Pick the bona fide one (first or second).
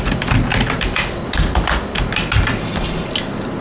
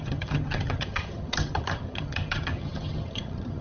first